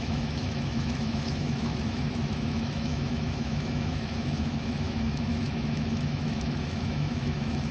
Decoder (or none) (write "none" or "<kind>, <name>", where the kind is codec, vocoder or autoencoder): autoencoder, DAC-VAE